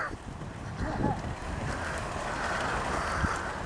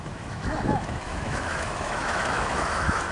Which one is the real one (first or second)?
first